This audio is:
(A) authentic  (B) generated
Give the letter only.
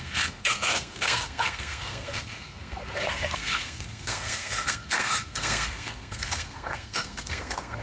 B